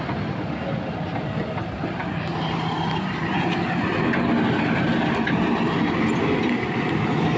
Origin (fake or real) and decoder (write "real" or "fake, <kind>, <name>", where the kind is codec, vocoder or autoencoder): real